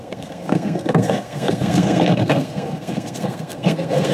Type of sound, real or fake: fake